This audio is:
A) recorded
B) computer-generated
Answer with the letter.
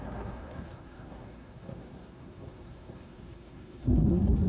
B